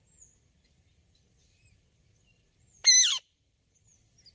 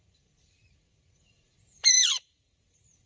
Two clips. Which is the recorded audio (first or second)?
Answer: first